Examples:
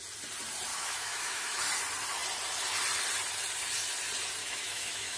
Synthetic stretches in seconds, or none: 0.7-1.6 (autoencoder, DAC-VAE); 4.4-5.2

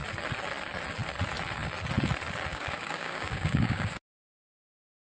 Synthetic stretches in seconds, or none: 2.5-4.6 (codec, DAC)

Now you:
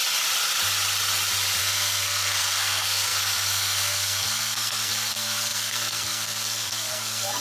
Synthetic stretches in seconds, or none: 1.6-7.4 (codec, SNAC)

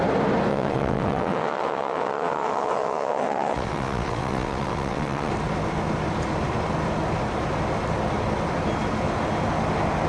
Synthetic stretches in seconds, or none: 0.5-5.3 (vocoder, WaveNeXt)